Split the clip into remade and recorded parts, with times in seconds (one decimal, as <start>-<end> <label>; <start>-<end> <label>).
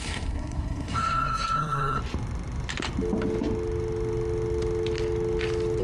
0.0-2.0 remade; 2.0-5.8 recorded